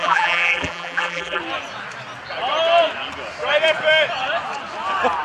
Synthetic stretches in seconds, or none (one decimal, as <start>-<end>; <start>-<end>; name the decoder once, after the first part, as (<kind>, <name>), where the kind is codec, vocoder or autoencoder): 0.0-1.4 (vocoder, BigVGAN v2)